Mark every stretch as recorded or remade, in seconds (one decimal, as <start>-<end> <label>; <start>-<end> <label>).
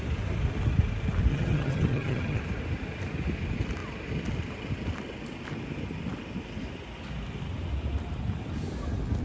0.0-1.3 recorded; 1.3-2.4 remade; 2.4-9.2 recorded